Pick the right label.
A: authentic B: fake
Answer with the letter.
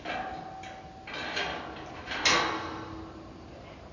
A